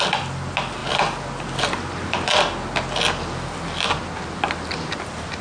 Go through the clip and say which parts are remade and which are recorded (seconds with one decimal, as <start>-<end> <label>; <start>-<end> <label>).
0.0-5.4 recorded